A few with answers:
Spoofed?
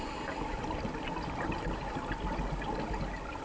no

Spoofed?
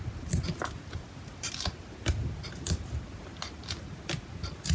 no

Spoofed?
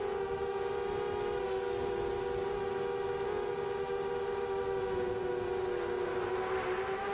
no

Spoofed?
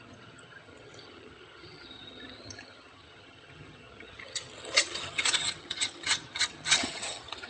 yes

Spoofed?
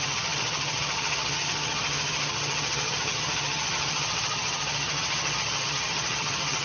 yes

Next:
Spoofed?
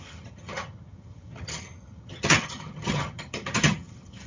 yes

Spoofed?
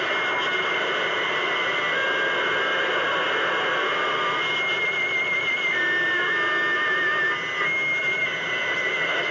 no